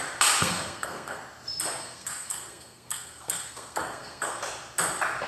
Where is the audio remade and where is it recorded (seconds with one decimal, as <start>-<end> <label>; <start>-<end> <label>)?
0.0-0.4 recorded; 0.4-1.2 remade; 1.2-1.8 recorded; 1.8-4.4 remade; 4.4-5.3 recorded